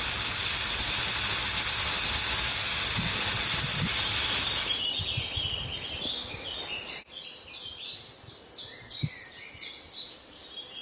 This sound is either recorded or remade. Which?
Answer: recorded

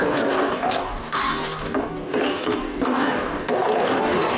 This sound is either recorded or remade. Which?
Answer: remade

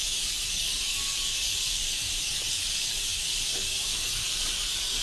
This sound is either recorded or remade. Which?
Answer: remade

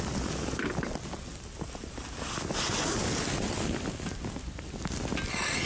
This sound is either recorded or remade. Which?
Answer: recorded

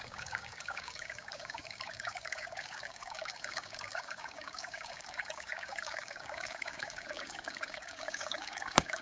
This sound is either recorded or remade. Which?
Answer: remade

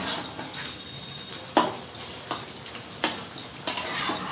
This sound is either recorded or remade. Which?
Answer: recorded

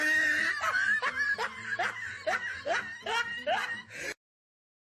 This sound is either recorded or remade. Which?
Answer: recorded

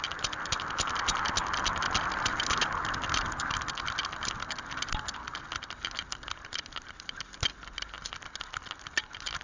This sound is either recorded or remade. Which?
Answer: recorded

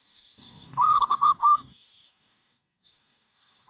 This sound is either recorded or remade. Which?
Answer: remade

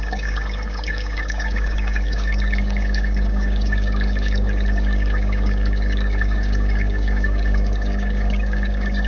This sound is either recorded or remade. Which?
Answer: remade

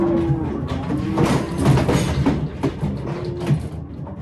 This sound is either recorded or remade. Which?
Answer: recorded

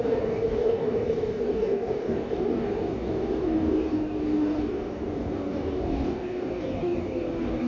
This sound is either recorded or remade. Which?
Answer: remade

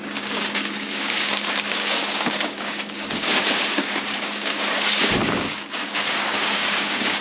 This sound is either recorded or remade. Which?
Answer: remade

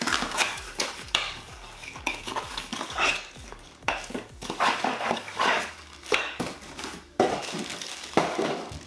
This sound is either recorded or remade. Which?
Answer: remade